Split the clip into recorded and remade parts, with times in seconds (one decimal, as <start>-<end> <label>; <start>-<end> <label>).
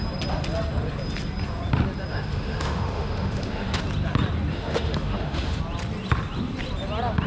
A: 0.0-2.1 recorded; 2.1-3.8 remade; 3.8-4.5 recorded; 4.5-5.6 remade; 5.6-7.3 recorded